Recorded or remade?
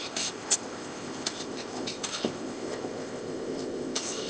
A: remade